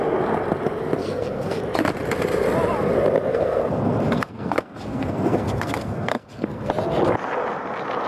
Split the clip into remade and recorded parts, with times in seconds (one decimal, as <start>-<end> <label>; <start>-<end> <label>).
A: 0.0-1.0 recorded; 1.0-1.6 remade; 1.6-3.3 recorded; 3.3-6.7 remade; 6.7-8.1 recorded